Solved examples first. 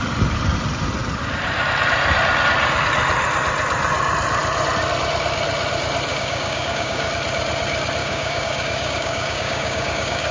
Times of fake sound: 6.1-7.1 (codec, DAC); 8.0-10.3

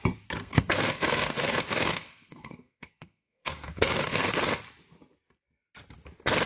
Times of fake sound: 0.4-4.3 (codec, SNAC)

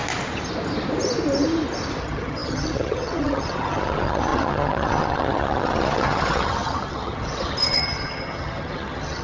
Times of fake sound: 2.0-9.2 (vocoder, HiFi-GAN)

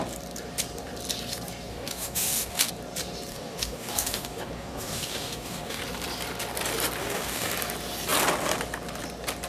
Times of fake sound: 1.7-2.7 (codec, DAC); 3.3-5.8; 7.0-7.5

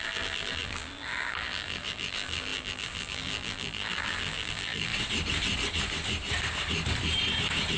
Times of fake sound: 0.0-4.9 (vocoder, BigVGAN v2)

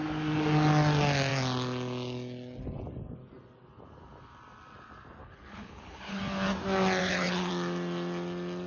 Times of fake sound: 5.2-6.2 (codec, HILCodec); 7.0-7.5